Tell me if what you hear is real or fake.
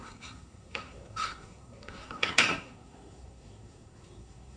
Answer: fake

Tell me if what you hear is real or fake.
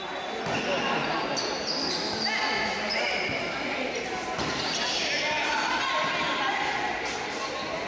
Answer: real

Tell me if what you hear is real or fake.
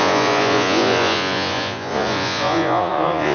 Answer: fake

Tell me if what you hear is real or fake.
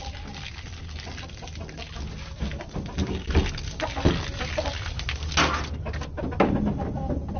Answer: real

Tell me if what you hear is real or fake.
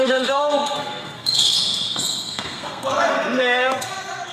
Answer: fake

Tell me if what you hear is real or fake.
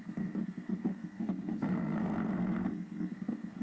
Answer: fake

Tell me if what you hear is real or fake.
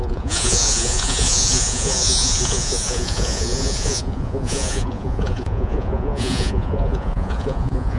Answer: fake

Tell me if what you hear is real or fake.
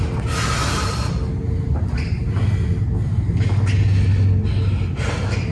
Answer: real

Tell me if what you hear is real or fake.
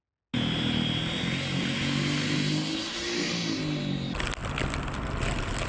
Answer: real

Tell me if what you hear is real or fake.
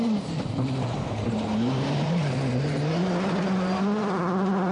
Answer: fake